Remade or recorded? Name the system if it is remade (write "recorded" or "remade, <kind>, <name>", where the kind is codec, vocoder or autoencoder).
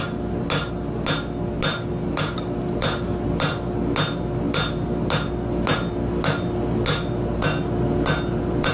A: recorded